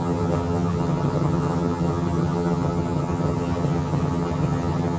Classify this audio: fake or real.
fake